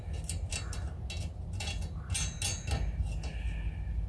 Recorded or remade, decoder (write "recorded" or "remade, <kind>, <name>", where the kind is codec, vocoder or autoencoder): recorded